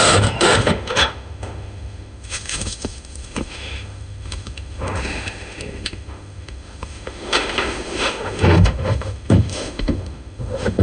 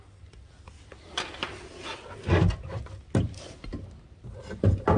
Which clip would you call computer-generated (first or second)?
first